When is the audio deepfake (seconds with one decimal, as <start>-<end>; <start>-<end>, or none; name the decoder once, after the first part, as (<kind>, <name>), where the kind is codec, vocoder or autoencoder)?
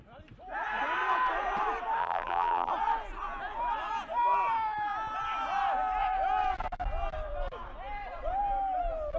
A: 2.0-2.7 (vocoder, BigVGAN v2)